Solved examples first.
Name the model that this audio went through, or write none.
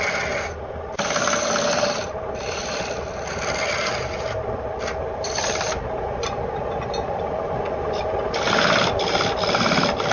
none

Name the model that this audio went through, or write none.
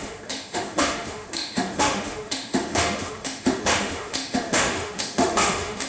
autoencoder, DAC-VAE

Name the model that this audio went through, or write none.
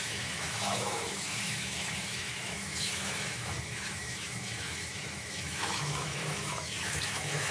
autoencoder, DAC-VAE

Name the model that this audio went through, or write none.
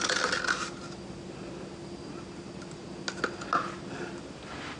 none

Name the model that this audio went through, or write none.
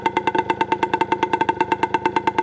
none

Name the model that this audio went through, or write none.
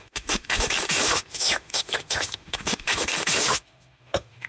autoencoder, DAC-VAE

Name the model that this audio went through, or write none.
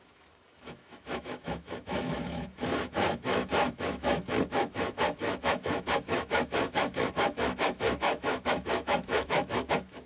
autoencoder, DAC-VAE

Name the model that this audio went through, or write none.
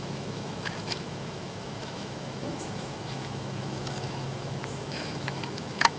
autoencoder, DAC-VAE